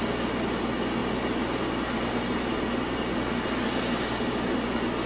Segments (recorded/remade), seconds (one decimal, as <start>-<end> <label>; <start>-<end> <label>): 0.0-5.1 recorded